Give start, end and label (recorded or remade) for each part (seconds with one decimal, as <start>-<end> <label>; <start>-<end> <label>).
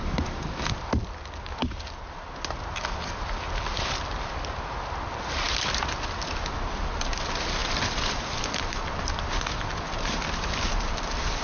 0.0-7.6 recorded; 7.6-8.4 remade; 8.4-11.4 recorded